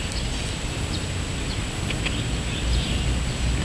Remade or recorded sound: recorded